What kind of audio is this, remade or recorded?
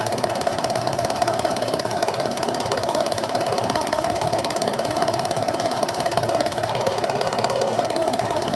remade